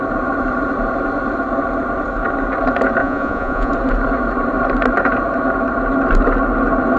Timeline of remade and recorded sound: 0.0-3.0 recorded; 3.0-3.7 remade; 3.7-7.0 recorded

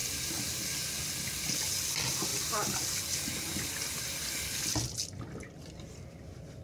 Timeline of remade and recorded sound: 0.0-6.6 recorded

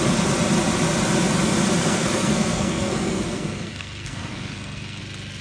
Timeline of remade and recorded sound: 0.0-1.8 recorded; 1.8-5.0 remade; 5.0-5.4 recorded

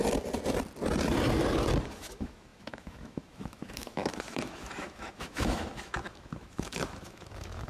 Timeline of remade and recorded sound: 0.0-1.8 recorded; 1.8-7.7 remade

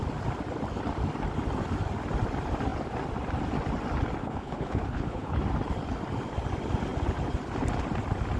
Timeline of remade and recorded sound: 0.0-4.2 recorded; 4.2-5.4 remade; 5.4-8.4 recorded

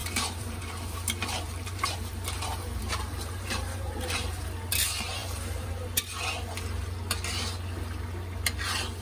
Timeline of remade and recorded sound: 0.0-2.1 remade; 2.1-2.8 recorded; 2.8-4.4 remade; 4.4-5.2 recorded; 5.2-5.7 remade; 5.7-9.0 recorded

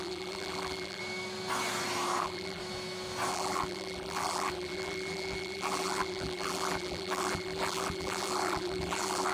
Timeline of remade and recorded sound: 0.0-1.0 remade; 1.0-2.2 recorded; 2.2-2.6 remade; 2.6-3.3 recorded; 3.3-9.3 remade